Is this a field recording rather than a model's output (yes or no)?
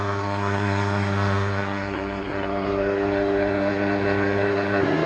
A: no